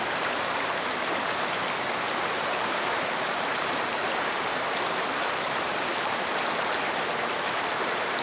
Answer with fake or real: fake